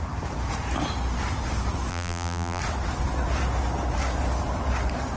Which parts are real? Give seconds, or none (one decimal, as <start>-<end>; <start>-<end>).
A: 0.0-1.9; 2.6-5.2